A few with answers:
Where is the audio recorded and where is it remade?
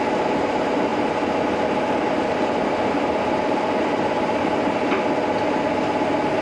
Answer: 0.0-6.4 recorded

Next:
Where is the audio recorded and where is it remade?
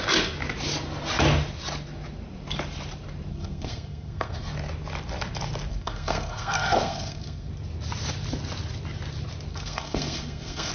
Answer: 0.0-3.3 recorded; 3.3-4.5 remade; 4.5-5.7 recorded; 5.7-7.5 remade; 7.5-9.5 recorded; 9.5-10.7 remade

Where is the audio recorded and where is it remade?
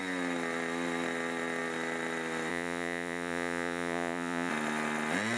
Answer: 0.0-2.5 recorded; 2.5-4.5 remade; 4.5-5.4 recorded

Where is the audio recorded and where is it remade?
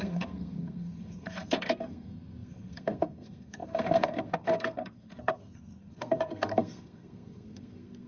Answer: 0.0-8.1 remade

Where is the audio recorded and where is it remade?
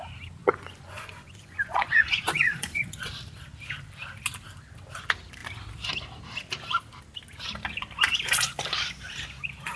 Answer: 0.0-0.4 recorded; 0.4-3.1 remade; 3.1-9.8 recorded